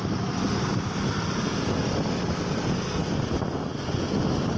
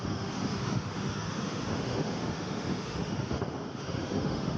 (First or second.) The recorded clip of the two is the first